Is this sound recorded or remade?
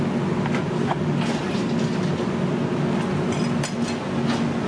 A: recorded